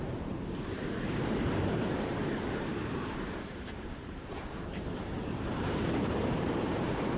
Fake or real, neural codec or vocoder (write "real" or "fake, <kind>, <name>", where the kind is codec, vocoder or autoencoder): fake, vocoder, BigVGAN v2